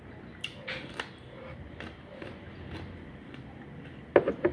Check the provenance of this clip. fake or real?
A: real